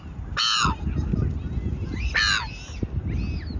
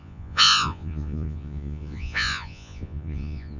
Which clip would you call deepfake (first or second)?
second